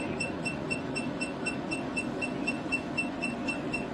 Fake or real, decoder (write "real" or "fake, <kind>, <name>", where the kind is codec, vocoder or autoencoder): fake, vocoder, Vocos